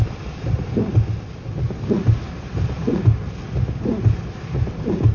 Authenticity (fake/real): real